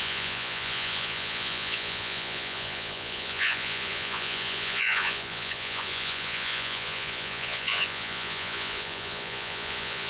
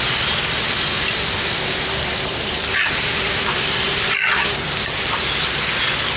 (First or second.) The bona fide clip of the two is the second